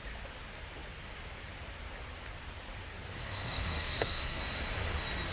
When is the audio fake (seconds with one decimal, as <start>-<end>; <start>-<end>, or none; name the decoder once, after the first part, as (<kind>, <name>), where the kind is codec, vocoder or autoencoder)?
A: 3.2-4.4 (codec, SNAC)